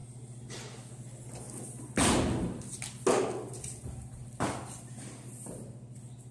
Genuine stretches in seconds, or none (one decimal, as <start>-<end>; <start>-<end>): 0.0-6.3